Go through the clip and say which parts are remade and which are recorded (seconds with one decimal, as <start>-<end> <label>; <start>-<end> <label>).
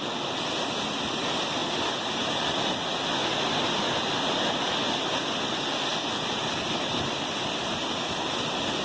0.0-8.8 recorded